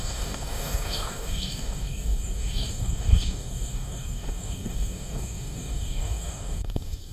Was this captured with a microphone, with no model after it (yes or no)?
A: no